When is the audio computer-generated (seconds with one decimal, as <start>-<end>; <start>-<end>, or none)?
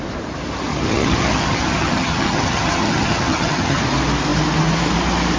0.7-3.8